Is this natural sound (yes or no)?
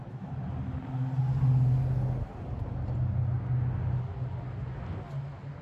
yes